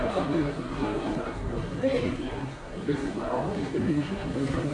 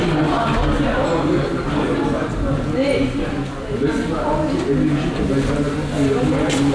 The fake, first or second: first